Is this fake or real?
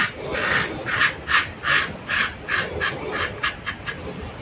real